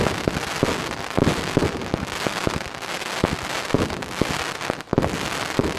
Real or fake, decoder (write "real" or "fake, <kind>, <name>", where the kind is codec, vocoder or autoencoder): real